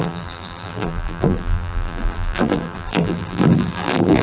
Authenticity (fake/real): fake